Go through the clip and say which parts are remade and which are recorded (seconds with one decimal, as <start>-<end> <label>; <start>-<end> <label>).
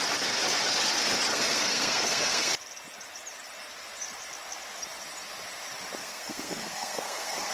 0.0-1.3 recorded; 1.3-2.5 remade; 2.5-6.0 recorded; 6.0-7.5 remade